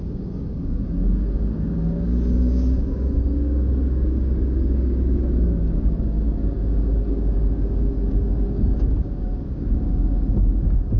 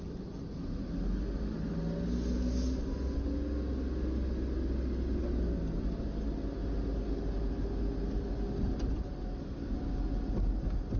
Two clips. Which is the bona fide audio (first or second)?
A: second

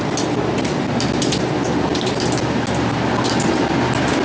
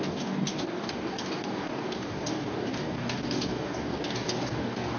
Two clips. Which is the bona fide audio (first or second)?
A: first